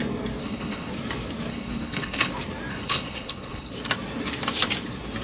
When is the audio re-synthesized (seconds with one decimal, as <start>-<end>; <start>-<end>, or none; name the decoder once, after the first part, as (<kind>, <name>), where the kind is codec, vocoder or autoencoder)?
0.4-0.9 (codec, HILCodec); 1.5-2.3; 2.7-3.7